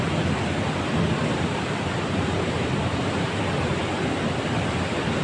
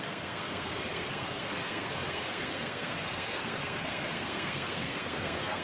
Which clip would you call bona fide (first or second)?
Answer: first